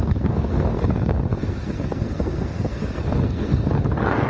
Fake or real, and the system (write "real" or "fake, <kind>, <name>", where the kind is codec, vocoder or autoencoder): fake, codec, SNAC